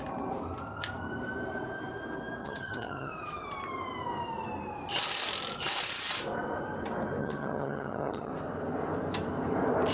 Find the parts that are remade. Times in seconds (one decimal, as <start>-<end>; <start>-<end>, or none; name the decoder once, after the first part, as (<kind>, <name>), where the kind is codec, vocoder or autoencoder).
2.4-3.1 (vocoder, HiFi-GAN); 7.2-8.3